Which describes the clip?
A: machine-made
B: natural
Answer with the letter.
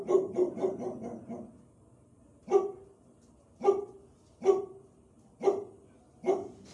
B